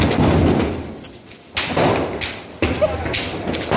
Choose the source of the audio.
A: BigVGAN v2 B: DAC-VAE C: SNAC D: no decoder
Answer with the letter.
D